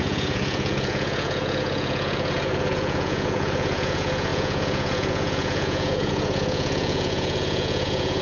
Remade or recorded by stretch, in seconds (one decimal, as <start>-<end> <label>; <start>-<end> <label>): 0.0-8.2 remade